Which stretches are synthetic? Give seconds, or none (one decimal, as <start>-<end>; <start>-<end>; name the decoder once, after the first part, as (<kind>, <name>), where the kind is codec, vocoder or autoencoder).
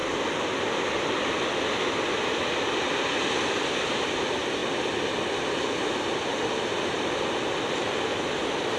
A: none